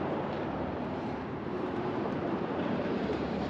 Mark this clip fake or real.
fake